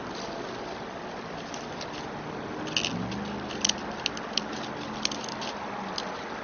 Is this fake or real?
real